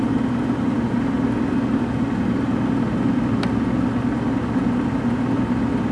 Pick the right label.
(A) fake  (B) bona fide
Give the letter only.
B